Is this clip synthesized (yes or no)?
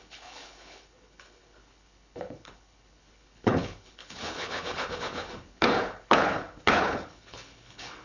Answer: yes